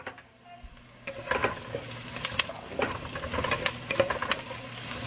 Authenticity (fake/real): real